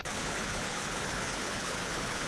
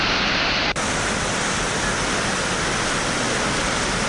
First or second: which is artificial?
first